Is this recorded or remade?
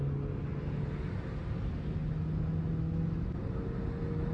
recorded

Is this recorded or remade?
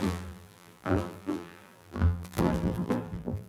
remade